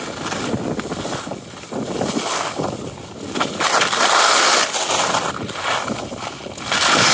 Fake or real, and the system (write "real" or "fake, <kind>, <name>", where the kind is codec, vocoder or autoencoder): real